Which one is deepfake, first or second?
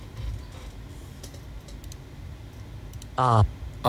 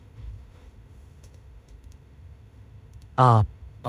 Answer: second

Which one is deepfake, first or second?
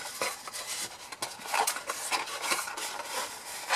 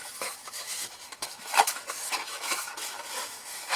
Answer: second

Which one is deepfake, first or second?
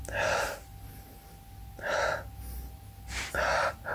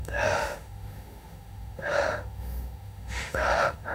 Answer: second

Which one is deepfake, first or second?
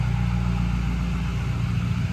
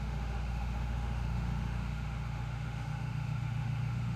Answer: second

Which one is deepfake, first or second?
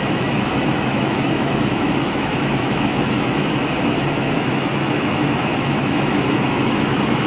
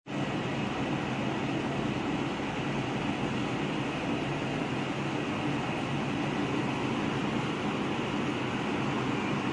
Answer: first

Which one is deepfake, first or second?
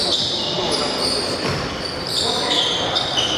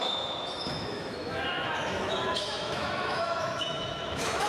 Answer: second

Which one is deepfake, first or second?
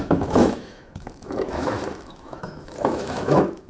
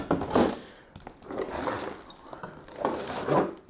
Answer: first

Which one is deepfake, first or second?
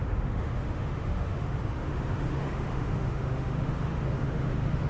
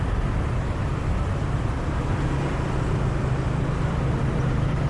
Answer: first